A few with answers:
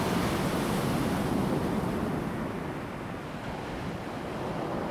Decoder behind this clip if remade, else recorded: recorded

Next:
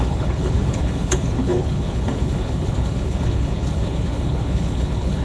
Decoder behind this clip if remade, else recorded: remade, codec, HILCodec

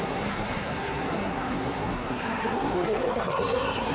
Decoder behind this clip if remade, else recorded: remade, codec, SNAC